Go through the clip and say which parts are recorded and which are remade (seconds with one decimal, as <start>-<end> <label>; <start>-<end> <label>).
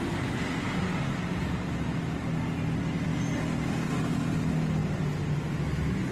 0.0-6.1 recorded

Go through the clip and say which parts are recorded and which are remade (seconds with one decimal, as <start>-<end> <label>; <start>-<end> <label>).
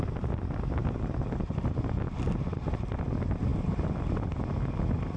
0.0-5.2 recorded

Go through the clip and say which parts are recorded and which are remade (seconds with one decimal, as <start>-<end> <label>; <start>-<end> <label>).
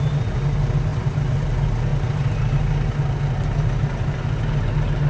0.0-5.1 recorded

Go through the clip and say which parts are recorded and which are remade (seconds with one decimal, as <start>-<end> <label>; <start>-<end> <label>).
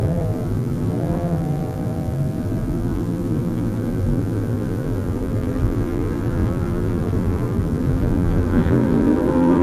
0.0-9.6 remade